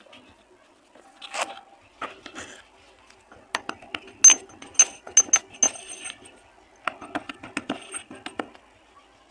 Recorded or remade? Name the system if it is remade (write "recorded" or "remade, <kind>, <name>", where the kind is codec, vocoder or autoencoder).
recorded